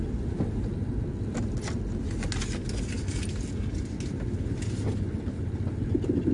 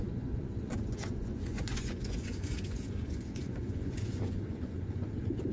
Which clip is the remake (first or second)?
second